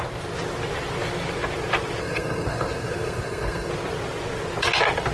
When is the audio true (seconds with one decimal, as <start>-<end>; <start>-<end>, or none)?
0.0-2.0; 3.7-5.1